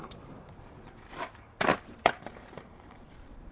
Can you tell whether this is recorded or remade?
remade